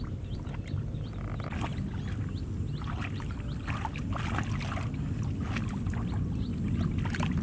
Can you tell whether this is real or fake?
real